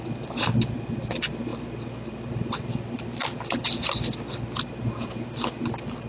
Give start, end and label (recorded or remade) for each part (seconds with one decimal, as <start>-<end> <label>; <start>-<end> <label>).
0.0-6.1 recorded